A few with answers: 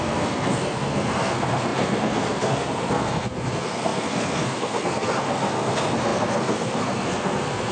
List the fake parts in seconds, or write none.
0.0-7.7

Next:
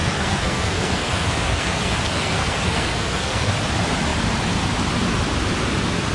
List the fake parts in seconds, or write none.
0.0-3.5